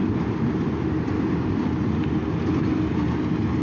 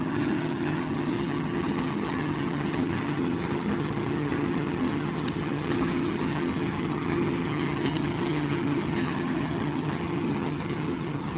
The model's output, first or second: second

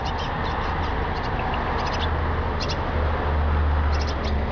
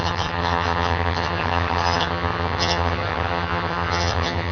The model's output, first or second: second